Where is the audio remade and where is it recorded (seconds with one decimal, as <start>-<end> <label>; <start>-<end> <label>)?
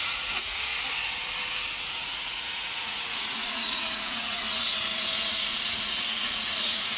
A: 0.0-0.7 remade; 0.7-1.9 recorded; 1.9-7.0 remade